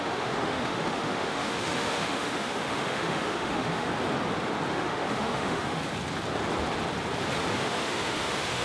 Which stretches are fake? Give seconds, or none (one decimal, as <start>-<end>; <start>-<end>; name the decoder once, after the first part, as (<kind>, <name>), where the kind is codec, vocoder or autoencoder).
0.0-3.9 (autoencoder, DAC-VAE); 4.7-5.8; 7.5-8.6